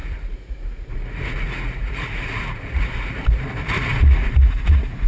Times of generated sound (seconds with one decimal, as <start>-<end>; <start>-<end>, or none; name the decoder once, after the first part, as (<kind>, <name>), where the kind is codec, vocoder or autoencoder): 0.0-3.1 (vocoder, Vocos); 3.9-5.1